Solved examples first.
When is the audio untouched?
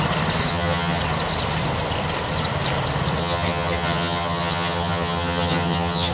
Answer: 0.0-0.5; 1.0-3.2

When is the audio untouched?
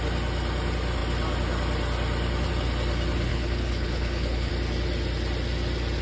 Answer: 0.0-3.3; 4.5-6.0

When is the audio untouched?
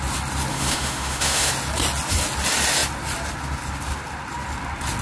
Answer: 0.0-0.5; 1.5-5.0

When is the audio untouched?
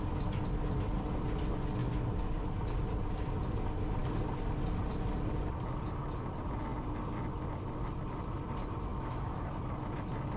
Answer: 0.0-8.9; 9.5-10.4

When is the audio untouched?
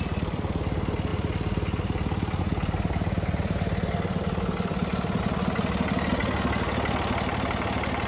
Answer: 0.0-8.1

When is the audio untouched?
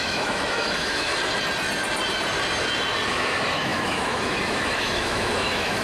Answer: 1.1-3.1